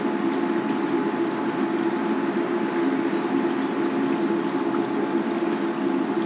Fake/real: real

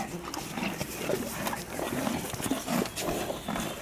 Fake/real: real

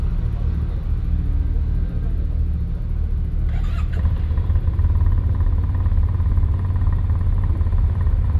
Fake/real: real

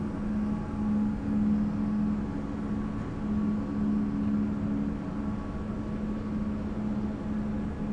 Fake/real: real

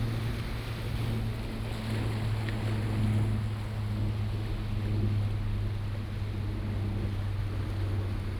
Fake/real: real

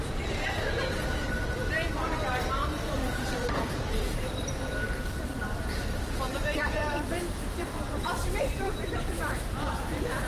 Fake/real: fake